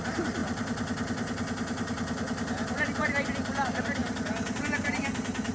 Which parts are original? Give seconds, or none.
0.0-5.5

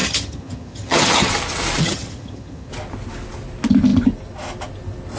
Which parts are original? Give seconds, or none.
1.3-1.8; 2.7-5.2

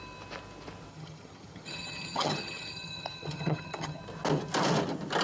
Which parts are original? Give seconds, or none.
0.0-0.9; 4.0-5.2

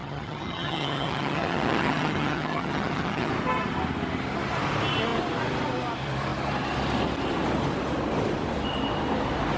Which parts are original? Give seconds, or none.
3.3-9.6